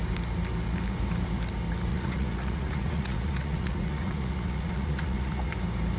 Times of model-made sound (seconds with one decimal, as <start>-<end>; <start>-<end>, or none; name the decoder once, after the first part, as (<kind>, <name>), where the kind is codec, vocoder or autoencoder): 1.9-5.5 (vocoder, Vocos)